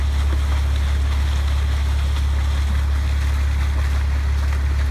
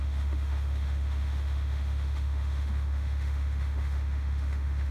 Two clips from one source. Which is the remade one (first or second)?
second